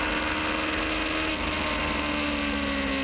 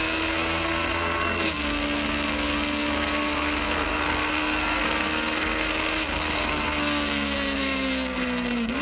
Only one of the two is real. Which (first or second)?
first